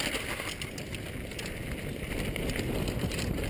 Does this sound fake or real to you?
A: real